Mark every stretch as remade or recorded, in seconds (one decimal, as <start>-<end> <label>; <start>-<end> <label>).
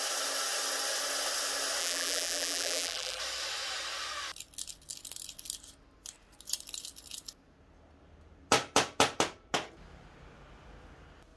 0.0-1.8 recorded; 1.8-3.2 remade; 3.2-11.4 recorded